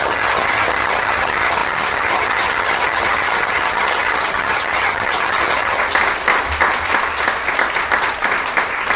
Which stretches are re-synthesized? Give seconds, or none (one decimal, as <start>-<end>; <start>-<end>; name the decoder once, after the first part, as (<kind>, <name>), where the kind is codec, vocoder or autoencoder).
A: 0.0-5.8 (vocoder, HiFi-GAN)